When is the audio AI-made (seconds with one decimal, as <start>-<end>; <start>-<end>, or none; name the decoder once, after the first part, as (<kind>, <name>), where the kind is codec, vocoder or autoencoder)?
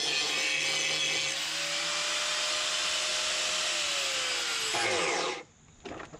none